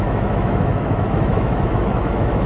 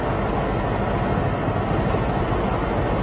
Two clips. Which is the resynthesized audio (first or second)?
first